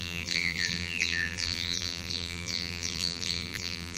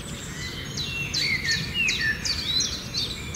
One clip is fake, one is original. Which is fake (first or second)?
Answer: first